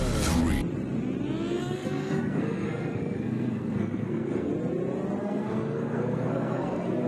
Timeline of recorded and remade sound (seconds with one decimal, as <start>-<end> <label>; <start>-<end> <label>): 0.0-1.6 recorded; 1.6-4.5 remade; 4.5-5.2 recorded; 5.2-7.1 remade